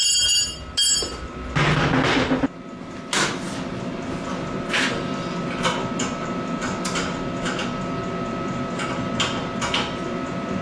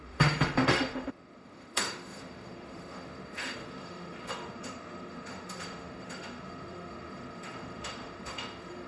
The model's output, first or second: second